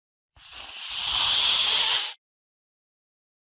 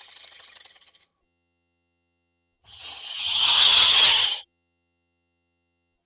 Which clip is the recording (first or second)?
first